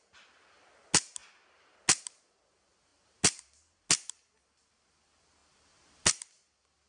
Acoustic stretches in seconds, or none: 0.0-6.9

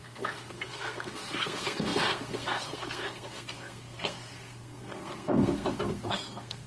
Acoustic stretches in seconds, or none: none